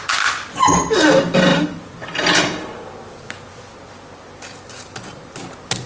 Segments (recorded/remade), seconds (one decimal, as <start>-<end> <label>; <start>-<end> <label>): 0.0-5.9 recorded